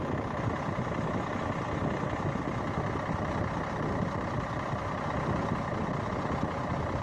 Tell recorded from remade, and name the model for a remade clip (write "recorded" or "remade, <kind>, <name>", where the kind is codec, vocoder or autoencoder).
recorded